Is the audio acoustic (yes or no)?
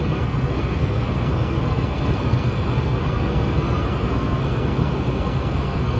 no